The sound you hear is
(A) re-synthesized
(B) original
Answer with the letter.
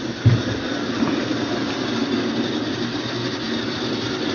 B